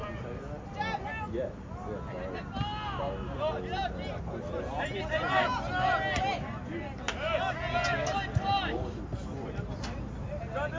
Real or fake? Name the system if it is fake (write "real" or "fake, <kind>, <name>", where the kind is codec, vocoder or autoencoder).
real